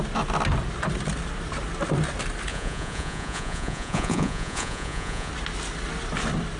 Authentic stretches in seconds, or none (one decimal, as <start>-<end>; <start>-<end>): 0.0-2.5; 5.3-6.6